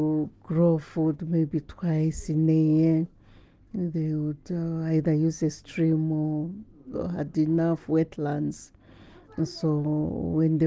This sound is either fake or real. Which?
real